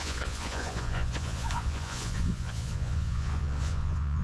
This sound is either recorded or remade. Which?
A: remade